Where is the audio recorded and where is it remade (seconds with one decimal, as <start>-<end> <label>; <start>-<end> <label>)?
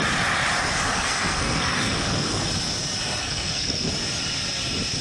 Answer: 0.0-0.9 recorded; 0.9-2.5 remade; 2.5-3.2 recorded; 3.2-3.9 remade; 3.9-5.0 recorded